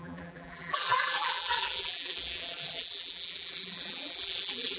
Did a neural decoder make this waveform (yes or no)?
yes